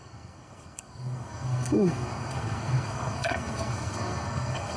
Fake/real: fake